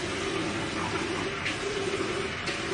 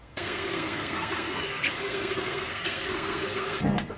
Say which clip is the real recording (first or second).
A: first